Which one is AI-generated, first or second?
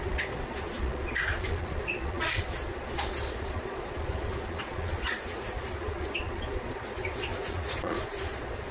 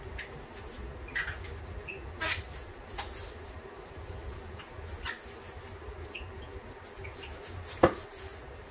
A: first